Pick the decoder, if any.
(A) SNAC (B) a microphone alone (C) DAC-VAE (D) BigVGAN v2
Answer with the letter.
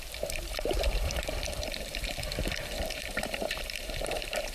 D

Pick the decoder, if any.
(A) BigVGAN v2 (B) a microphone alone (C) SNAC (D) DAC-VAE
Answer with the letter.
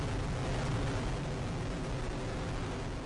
B